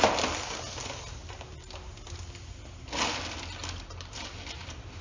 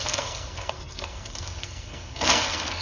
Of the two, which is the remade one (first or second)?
second